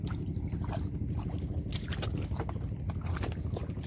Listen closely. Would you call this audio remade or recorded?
recorded